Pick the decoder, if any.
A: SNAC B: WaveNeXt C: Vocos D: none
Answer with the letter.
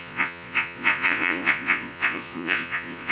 C